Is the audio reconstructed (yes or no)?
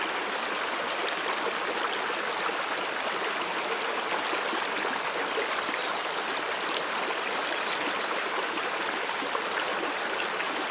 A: no